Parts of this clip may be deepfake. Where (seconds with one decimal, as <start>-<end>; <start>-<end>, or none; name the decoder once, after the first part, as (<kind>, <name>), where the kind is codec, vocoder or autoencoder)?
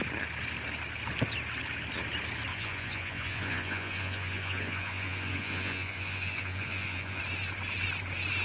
2.5-7.2 (vocoder, Vocos)